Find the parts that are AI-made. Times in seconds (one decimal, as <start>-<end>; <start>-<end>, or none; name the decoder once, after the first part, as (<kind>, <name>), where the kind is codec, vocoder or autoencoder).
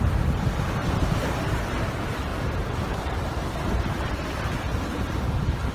0.8-1.5 (vocoder, BigVGAN v2); 2.3-4.6